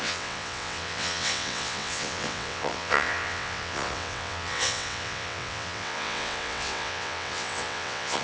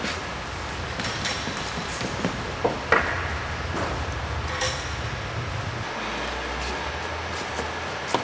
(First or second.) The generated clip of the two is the first